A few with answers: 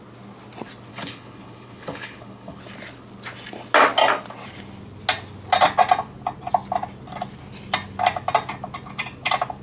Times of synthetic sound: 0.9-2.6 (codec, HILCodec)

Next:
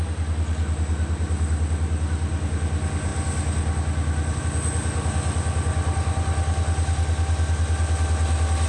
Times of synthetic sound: none

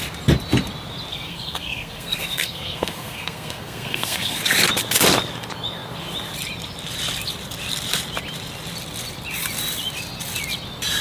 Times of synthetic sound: 1.1-4.4 (codec, SNAC)